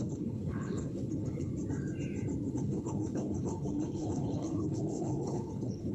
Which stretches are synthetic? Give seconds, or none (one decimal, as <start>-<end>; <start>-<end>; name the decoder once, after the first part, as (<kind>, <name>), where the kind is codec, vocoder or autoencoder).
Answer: 0.0-1.5 (codec, HILCodec); 2.5-5.9